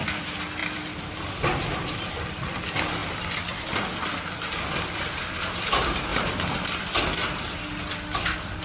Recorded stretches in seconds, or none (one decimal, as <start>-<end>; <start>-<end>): 0.0-0.6; 2.6-3.0; 4.1-8.6